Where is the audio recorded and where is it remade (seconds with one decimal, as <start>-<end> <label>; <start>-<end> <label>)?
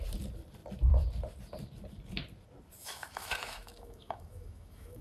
0.0-2.8 recorded; 2.8-5.0 remade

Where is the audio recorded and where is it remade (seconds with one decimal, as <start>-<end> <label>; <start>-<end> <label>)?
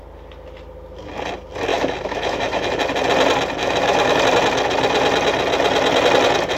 0.0-1.7 recorded; 1.7-2.7 remade; 2.7-3.6 recorded; 3.6-4.2 remade; 4.2-6.6 recorded